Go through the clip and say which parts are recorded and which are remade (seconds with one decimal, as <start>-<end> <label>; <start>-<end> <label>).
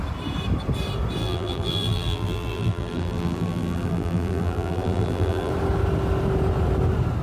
0.0-1.2 recorded; 1.2-5.5 remade; 5.5-7.2 recorded